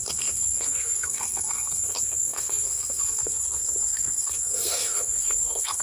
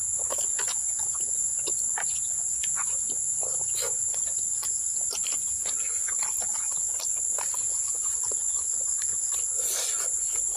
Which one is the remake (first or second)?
first